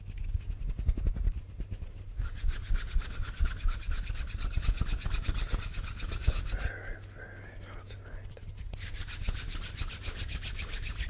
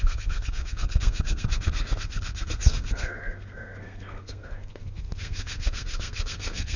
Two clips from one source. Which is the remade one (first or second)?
second